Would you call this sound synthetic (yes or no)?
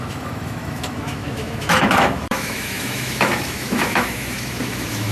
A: yes